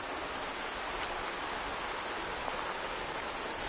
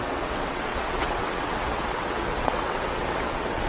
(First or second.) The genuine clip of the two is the first